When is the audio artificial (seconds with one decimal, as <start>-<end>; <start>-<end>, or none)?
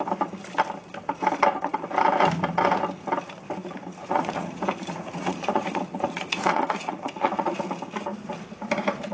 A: 3.6-7.6